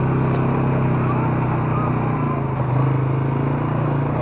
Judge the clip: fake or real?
real